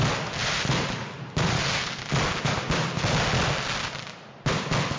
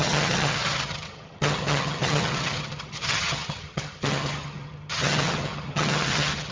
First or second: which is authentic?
first